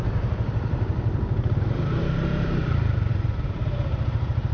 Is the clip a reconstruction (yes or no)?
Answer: yes